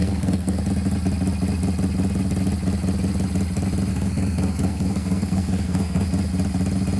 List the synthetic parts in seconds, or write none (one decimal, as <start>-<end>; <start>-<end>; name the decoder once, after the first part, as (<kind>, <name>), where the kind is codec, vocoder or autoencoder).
0.0-0.6 (codec, SNAC); 3.9-6.1